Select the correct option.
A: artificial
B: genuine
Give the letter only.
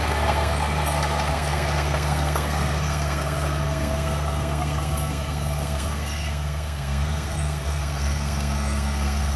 A